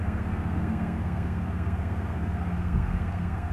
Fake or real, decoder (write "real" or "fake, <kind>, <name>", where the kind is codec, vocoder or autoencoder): fake, codec, SNAC